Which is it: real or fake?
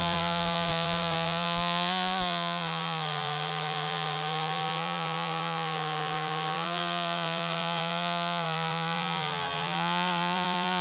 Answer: fake